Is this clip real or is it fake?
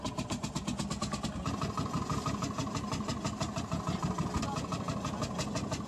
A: real